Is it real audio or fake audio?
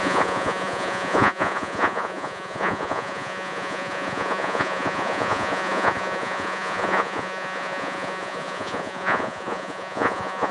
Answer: fake